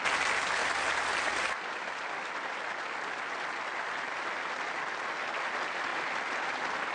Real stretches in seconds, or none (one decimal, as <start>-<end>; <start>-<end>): 0.0-6.9